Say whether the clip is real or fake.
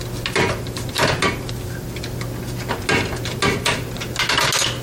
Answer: real